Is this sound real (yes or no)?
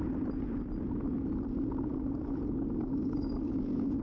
yes